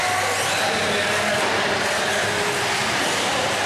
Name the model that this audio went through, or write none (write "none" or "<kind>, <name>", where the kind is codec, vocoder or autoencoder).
none